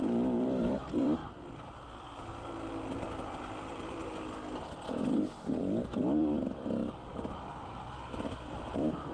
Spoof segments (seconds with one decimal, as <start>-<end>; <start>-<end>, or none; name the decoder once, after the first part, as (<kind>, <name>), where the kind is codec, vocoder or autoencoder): 0.0-1.2 (vocoder, BigVGAN v2); 2.9-4.0; 5.6-9.1